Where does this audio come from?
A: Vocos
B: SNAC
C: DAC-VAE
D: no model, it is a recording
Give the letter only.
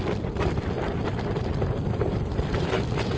D